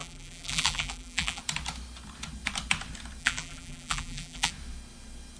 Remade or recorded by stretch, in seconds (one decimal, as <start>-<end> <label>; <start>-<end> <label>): 0.0-1.4 remade; 1.4-3.2 recorded; 3.2-4.5 remade; 4.5-5.4 recorded